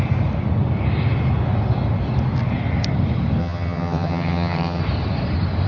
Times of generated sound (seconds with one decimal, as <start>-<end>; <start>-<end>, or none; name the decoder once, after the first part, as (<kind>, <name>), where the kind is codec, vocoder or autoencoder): 3.4-4.8 (vocoder, HiFi-GAN)